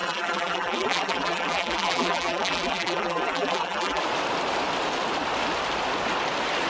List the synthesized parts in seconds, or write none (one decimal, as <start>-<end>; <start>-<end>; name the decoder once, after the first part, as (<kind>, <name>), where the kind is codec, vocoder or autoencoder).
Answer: 0.0-4.0 (vocoder, BigVGAN v2)